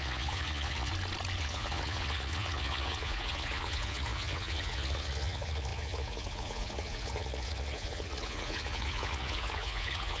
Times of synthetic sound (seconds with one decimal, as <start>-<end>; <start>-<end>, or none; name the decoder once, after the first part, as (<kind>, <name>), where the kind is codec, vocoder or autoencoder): 0.0-0.9 (vocoder, Vocos); 1.4-10.2